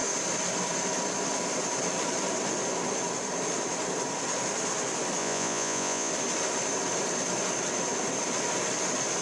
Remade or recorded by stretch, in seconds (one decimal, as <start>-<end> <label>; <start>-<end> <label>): 0.0-5.2 recorded; 5.2-6.1 remade; 6.1-9.2 recorded